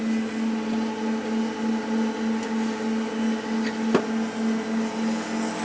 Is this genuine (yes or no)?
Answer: yes